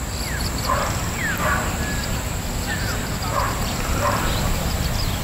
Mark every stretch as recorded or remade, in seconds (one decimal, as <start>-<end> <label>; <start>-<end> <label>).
0.0-3.3 recorded; 3.3-4.2 remade; 4.2-5.2 recorded